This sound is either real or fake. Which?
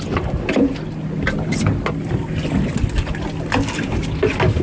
real